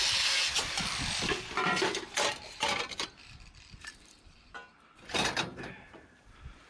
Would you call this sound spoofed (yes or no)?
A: yes